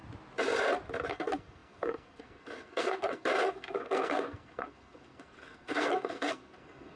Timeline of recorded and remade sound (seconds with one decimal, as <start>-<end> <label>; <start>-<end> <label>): 0.0-1.1 recorded; 1.1-7.0 remade